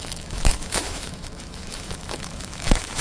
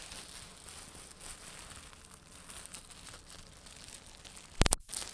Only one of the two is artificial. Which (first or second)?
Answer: first